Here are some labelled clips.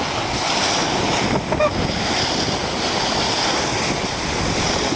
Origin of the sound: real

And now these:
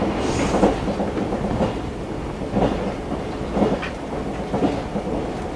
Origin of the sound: real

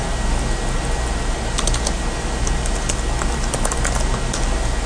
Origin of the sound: real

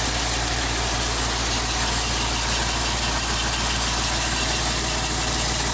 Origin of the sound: real